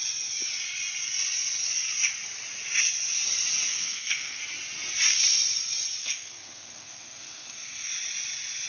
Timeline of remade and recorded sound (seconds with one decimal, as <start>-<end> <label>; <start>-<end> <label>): 0.0-3.7 recorded; 3.7-4.4 remade; 4.4-6.0 recorded; 6.0-7.9 remade; 7.9-8.7 recorded